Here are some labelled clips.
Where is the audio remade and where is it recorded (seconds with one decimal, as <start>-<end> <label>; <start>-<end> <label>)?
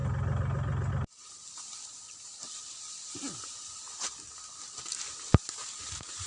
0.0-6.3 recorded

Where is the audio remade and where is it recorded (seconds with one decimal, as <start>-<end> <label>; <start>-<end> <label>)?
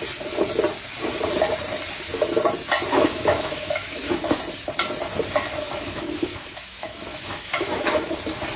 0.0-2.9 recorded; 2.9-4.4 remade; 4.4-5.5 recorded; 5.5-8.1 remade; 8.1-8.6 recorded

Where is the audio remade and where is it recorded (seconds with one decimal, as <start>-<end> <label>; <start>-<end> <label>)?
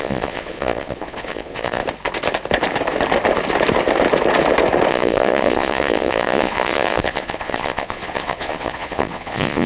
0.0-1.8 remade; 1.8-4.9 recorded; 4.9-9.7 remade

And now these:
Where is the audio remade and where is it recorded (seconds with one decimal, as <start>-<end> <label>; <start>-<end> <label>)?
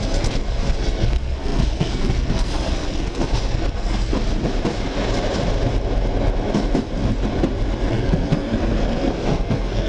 0.0-4.1 remade; 4.1-7.9 recorded; 7.9-9.9 remade